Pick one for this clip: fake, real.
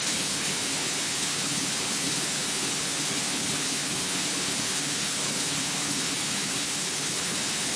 fake